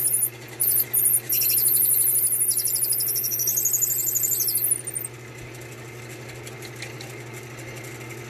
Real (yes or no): yes